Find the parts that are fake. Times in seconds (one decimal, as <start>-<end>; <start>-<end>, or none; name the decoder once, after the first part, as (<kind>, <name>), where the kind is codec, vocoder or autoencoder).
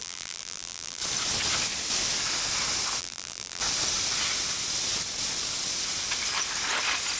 0.0-1.0 (vocoder, BigVGAN v2); 3.0-3.6